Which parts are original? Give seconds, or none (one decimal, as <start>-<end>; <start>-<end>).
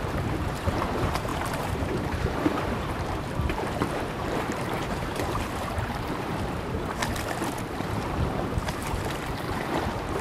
7.0-7.7